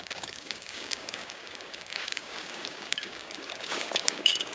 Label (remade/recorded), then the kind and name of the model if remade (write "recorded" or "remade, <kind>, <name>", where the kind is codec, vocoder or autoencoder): remade, codec, DAC